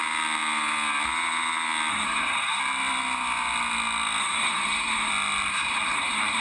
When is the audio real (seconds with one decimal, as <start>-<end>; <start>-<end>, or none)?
0.0-1.9; 2.6-4.2; 5.1-5.5